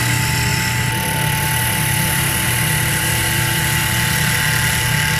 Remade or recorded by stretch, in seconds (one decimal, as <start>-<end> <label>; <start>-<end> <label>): 0.0-0.5 recorded; 0.5-3.6 remade; 3.6-5.2 recorded